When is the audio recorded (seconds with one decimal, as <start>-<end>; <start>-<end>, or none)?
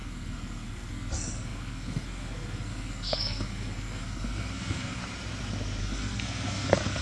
5.0-5.8